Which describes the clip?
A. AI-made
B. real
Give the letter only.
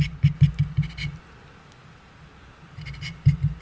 B